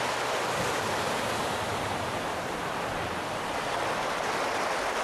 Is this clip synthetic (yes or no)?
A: no